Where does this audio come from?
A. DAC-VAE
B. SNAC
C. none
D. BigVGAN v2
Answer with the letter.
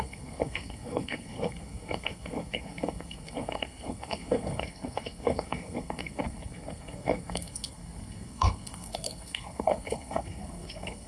B